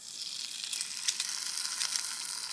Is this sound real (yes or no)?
yes